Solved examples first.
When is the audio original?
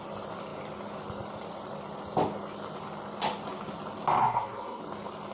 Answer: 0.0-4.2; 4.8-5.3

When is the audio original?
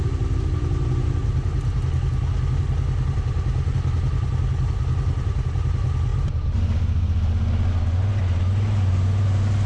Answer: 0.0-9.7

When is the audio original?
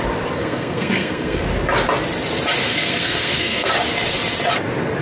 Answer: 0.0-0.4; 1.4-2.7; 3.7-5.0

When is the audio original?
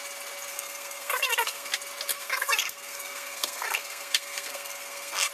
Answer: 0.0-0.5; 1.7-2.1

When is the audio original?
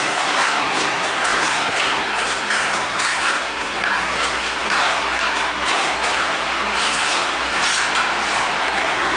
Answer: 7.6-8.6